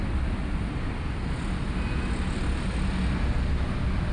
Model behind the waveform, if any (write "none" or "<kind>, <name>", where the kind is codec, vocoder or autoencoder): none